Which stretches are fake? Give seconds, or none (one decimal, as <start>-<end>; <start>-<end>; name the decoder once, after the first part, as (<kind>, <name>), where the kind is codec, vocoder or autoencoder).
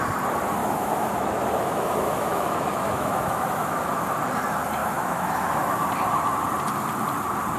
0.6-4.0 (autoencoder, DAC-VAE); 4.8-5.8